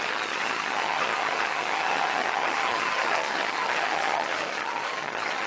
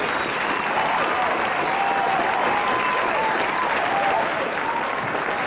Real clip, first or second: second